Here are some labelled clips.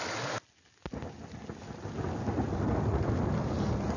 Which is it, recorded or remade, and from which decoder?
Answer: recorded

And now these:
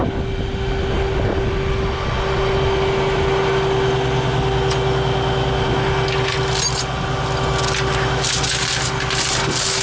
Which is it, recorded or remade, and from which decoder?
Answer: recorded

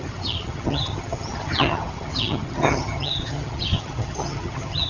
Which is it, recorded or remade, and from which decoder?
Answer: remade, vocoder, HiFi-GAN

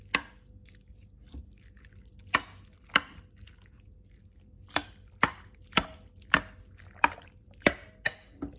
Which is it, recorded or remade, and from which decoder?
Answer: recorded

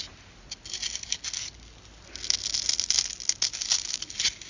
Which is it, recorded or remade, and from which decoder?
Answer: recorded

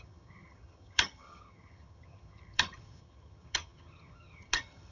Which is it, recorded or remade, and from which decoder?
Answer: remade, vocoder, HiFi-GAN